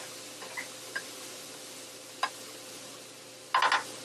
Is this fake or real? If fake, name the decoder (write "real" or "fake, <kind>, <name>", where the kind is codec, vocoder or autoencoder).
real